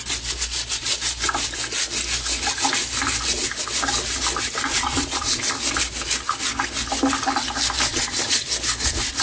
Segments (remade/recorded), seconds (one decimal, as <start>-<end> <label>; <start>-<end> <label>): 0.0-4.7 recorded; 4.7-5.4 remade; 5.4-7.9 recorded; 7.9-8.5 remade; 8.5-9.2 recorded